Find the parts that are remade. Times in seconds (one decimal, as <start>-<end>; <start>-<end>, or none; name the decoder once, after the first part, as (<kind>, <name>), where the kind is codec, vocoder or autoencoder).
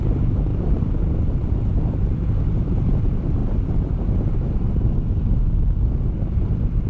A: none